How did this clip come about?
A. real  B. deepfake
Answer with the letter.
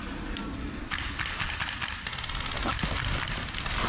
A